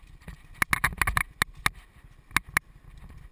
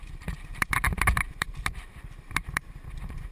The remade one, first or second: second